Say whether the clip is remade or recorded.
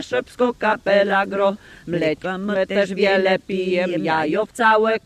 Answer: recorded